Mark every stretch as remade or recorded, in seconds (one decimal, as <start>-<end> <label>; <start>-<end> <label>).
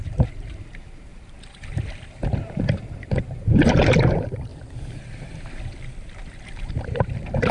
0.0-1.1 remade; 1.1-2.3 recorded; 2.3-4.5 remade; 4.5-6.7 recorded; 6.7-7.5 remade